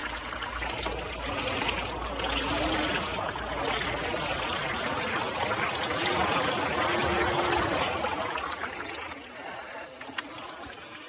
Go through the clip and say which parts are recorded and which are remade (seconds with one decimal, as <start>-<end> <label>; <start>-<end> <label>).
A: 0.0-11.1 recorded